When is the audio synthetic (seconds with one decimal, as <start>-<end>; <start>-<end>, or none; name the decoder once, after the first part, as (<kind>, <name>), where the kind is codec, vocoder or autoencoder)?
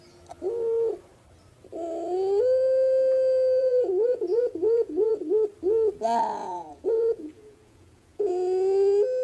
3.6-5.1 (vocoder, Vocos); 6.4-8.3